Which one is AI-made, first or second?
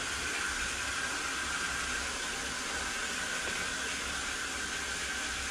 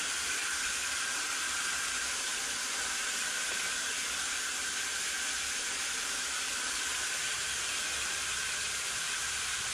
second